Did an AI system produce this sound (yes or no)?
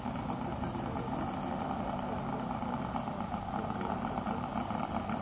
no